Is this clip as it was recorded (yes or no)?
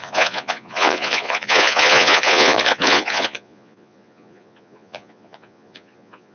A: no